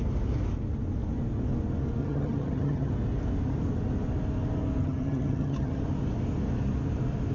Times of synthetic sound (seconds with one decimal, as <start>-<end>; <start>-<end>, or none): 2.0-2.9; 4.8-5.8